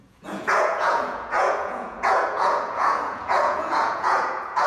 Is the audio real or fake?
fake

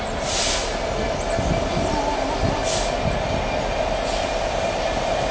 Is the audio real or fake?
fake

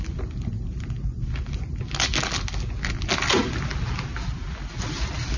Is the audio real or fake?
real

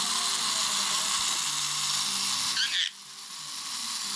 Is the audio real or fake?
real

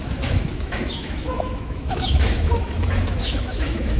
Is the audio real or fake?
fake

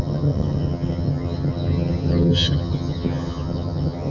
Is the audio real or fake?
fake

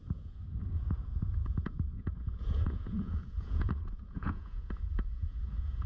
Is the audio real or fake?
fake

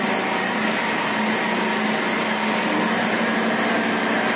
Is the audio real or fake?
real